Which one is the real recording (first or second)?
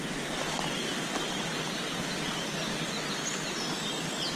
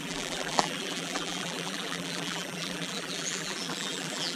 first